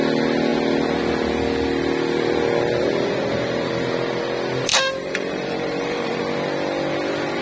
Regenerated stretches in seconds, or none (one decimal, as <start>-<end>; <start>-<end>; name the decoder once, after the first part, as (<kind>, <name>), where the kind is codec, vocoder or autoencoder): 4.7-6.2 (vocoder, BigVGAN v2)